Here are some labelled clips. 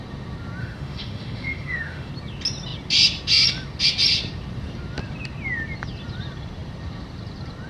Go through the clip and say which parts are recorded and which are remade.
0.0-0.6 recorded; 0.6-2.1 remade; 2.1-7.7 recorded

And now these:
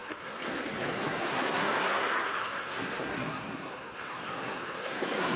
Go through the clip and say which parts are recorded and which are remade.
0.0-5.4 remade

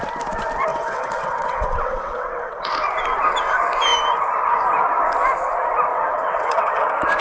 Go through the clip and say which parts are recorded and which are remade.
0.0-0.7 recorded; 0.7-2.7 remade; 2.7-5.9 recorded; 5.9-6.8 remade; 6.8-7.2 recorded

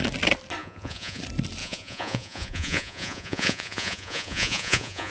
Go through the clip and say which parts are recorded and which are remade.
0.0-0.6 recorded; 0.6-1.2 remade; 1.2-1.6 recorded; 1.6-5.1 remade